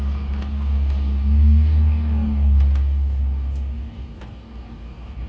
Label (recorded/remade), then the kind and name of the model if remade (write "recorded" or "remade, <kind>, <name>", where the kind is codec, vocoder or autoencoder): remade, codec, DAC